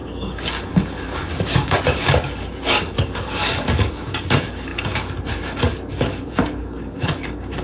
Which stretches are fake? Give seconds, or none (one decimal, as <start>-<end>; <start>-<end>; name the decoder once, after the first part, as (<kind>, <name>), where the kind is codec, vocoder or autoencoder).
0.0-7.6 (codec, DAC)